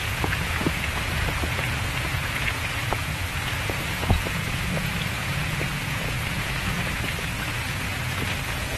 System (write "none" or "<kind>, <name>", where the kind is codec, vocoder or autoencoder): vocoder, Vocos